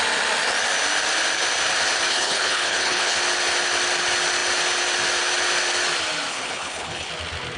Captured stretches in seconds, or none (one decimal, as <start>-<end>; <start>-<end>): 0.0-2.1; 3.2-6.3; 7.1-7.6